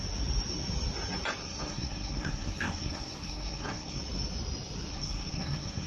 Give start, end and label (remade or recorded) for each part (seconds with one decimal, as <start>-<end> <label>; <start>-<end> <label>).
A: 0.0-1.4 recorded; 1.4-4.0 remade; 4.0-4.9 recorded; 4.9-5.9 remade